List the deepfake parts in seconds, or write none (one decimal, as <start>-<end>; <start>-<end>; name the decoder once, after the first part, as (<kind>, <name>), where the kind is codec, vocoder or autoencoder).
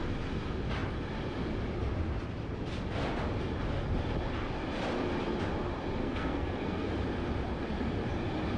6.0-6.9 (codec, SNAC)